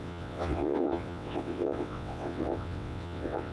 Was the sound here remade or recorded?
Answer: remade